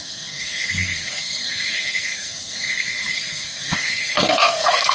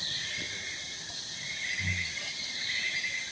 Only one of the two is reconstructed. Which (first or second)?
first